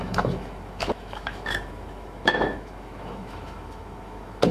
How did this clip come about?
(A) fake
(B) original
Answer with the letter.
A